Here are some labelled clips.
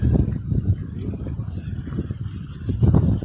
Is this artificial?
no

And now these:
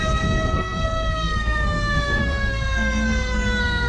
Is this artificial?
yes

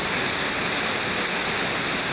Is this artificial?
no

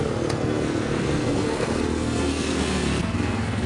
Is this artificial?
yes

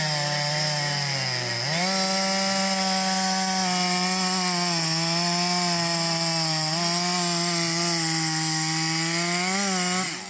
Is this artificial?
no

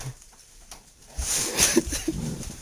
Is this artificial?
yes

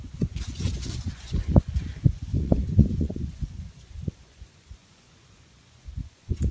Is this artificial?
yes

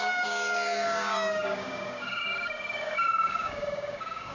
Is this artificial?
yes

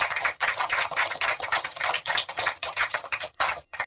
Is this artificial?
yes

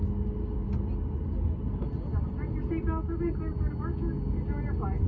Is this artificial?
no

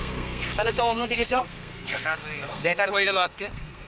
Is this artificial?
yes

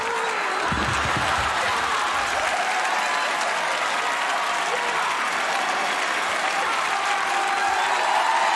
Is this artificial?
no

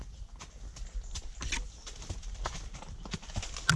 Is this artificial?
no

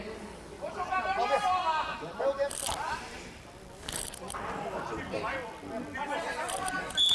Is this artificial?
no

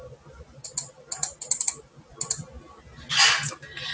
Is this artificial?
no